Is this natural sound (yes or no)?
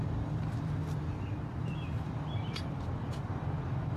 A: no